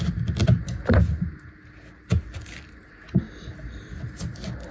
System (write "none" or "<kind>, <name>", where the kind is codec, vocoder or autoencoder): none